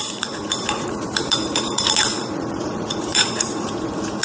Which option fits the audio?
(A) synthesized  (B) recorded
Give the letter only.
A